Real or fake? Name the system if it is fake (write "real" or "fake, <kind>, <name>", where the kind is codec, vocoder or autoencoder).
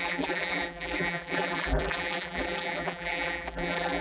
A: fake, vocoder, BigVGAN v2